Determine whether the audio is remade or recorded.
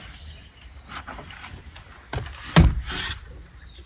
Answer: recorded